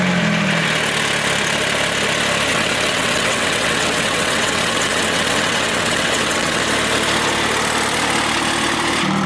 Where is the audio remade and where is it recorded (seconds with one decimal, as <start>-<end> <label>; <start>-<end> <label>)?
0.0-2.5 recorded; 2.5-6.6 remade; 6.6-9.3 recorded

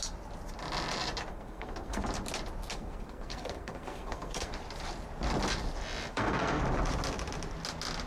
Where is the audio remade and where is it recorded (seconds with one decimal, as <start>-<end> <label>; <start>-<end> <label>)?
0.0-1.3 recorded; 1.3-2.0 remade; 2.0-2.7 recorded; 2.7-4.5 remade; 4.5-6.1 recorded; 6.1-6.6 remade; 6.6-8.1 recorded

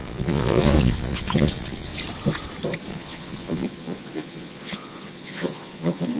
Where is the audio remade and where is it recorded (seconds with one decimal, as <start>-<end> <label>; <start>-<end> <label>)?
0.0-1.9 remade; 1.9-2.9 recorded; 2.9-6.2 remade

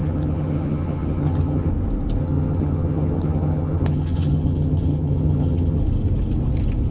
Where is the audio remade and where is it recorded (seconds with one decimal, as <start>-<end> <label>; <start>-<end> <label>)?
0.0-1.7 remade; 1.7-2.2 recorded; 2.2-5.8 remade; 5.8-6.9 recorded